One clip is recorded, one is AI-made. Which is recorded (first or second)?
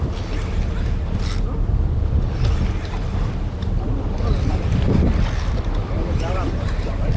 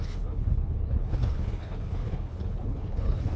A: first